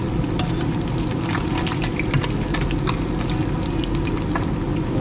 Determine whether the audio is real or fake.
real